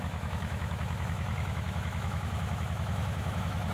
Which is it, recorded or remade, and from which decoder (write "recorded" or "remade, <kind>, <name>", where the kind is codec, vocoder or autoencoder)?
remade, autoencoder, DAC-VAE